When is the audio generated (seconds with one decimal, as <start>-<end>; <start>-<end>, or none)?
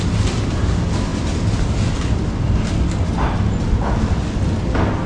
none